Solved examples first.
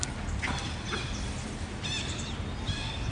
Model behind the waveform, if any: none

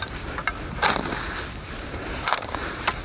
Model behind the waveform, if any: none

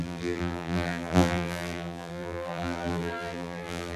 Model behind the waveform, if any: vocoder, BigVGAN v2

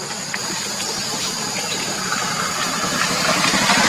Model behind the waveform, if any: none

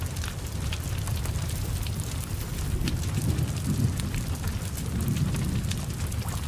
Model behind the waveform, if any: none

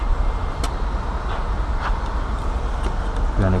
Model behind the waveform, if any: none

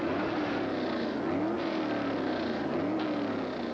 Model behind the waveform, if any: none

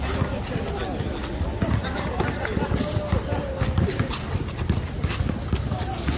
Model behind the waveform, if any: none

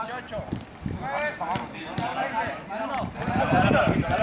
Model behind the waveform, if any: none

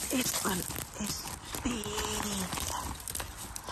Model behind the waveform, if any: none